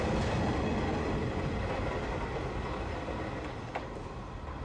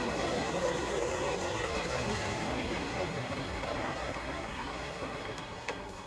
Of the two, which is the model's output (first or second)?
second